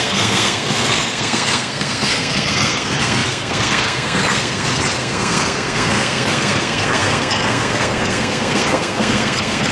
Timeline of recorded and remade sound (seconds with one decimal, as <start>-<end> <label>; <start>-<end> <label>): 0.0-9.7 remade